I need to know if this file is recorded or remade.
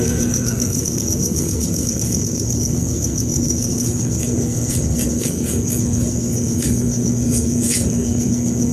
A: remade